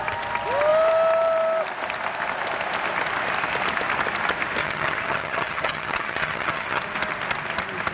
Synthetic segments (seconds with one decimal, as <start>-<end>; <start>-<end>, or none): 4.6-6.8